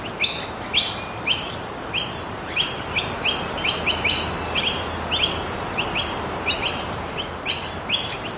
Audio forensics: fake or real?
real